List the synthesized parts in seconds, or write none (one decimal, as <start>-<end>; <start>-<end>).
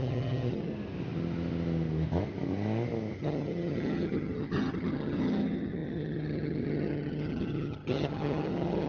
0.0-0.7; 3.2-8.9